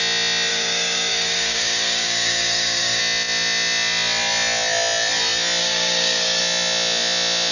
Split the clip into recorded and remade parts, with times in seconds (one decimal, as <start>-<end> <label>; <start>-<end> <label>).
0.0-0.5 recorded; 0.5-3.0 remade; 3.0-5.6 recorded; 5.6-6.4 remade; 6.4-7.5 recorded